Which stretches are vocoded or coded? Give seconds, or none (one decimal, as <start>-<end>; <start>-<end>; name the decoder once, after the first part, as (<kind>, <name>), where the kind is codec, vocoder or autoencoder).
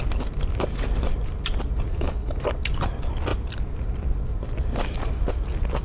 1.9-2.4 (codec, HILCodec)